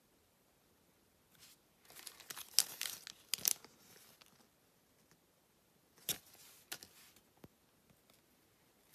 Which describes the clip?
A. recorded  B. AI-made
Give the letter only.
A